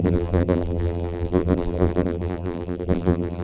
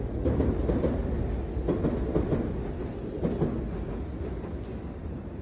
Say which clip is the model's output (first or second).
first